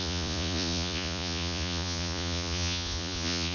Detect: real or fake fake